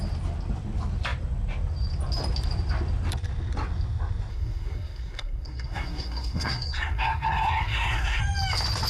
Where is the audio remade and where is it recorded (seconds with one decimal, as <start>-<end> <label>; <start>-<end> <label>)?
0.0-4.3 recorded; 4.3-8.2 remade; 8.2-8.9 recorded